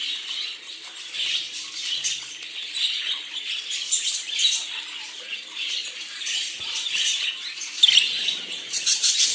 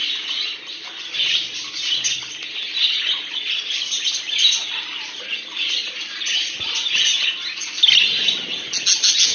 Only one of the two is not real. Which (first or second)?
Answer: first